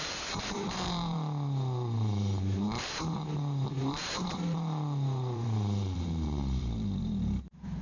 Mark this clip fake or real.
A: fake